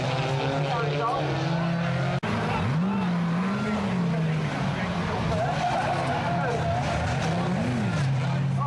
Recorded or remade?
recorded